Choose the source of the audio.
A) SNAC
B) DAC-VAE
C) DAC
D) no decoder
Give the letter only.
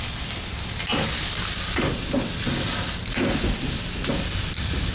D